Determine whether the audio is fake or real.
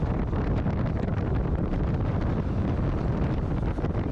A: real